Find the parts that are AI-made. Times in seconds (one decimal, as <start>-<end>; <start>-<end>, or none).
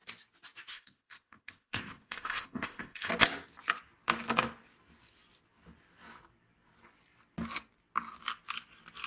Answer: 0.7-3.1